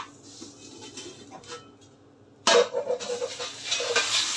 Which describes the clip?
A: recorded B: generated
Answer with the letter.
A